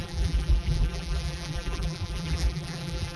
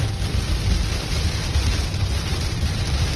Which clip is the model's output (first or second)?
first